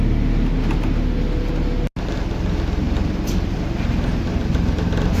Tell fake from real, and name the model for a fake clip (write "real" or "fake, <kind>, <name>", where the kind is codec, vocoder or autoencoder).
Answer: real